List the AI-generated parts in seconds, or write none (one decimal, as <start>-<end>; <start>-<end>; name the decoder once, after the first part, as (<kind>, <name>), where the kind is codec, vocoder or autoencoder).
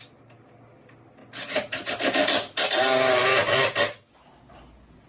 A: none